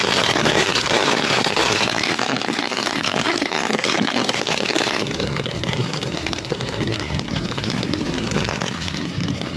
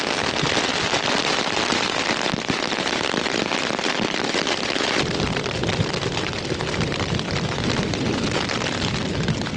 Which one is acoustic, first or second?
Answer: second